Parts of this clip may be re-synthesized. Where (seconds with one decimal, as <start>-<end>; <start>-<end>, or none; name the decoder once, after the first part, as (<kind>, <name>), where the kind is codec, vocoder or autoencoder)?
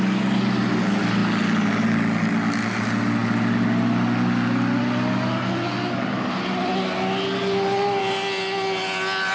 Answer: none